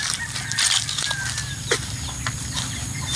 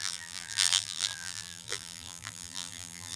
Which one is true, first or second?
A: first